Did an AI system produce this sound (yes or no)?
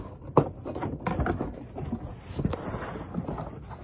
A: no